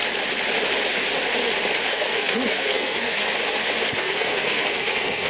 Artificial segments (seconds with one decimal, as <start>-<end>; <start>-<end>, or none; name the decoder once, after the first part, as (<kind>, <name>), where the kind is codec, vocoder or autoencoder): 1.9-3.2 (codec, SNAC); 4.0-5.3